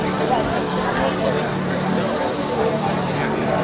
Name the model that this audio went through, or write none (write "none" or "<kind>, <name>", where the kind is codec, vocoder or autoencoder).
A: vocoder, BigVGAN v2